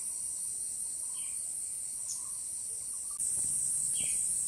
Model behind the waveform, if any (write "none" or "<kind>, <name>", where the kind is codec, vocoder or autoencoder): none